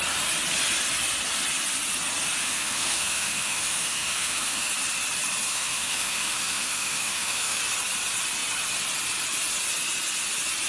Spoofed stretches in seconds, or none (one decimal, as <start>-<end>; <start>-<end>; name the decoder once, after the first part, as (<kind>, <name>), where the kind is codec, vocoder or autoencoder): 2.4-4.7 (autoencoder, DAC-VAE); 5.5-7.6